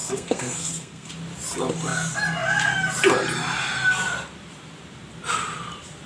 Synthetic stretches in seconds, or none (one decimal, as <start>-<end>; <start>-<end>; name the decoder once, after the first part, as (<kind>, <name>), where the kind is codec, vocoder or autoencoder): 0.0-1.1 (codec, SNAC)